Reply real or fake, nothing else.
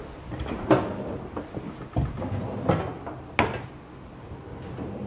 real